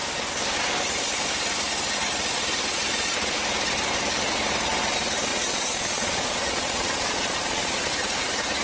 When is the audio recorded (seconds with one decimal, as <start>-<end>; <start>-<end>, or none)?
0.0-5.3; 7.9-8.6